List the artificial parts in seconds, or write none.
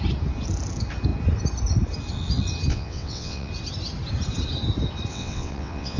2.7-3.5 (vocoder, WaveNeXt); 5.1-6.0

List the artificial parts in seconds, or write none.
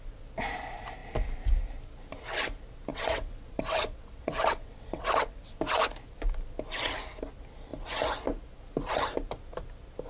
2.9-5.6 (vocoder, WaveNeXt)